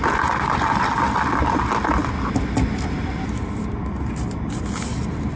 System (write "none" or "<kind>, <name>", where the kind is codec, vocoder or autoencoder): none